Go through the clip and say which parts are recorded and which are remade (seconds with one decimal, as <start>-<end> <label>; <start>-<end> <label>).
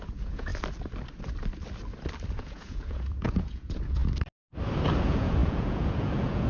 0.0-0.5 remade; 0.5-2.3 recorded; 2.3-4.0 remade; 4.0-4.9 recorded; 4.9-6.5 remade